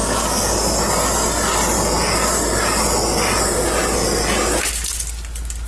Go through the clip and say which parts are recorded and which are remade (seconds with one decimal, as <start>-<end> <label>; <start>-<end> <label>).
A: 0.0-5.7 recorded